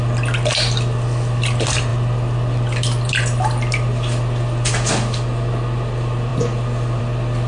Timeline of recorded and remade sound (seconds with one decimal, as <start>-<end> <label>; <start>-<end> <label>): 0.0-7.5 recorded